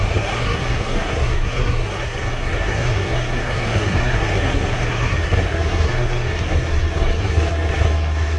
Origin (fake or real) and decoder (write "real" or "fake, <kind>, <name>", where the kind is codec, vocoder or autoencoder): fake, codec, SNAC